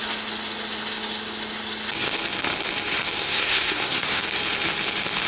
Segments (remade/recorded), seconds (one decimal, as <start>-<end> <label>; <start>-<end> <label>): 0.0-3.2 recorded; 3.2-4.2 remade; 4.2-5.3 recorded

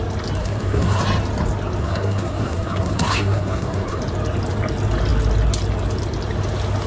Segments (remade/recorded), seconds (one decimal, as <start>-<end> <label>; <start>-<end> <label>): 0.0-0.4 recorded; 0.4-1.0 remade; 1.0-1.8 recorded; 1.8-4.0 remade; 4.0-6.9 recorded